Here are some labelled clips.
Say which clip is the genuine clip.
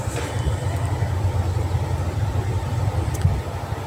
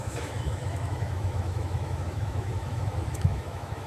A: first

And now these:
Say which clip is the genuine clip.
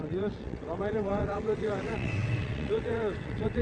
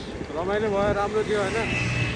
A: second